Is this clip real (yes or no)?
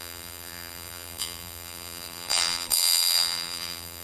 no